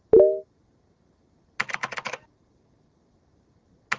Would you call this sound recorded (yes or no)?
yes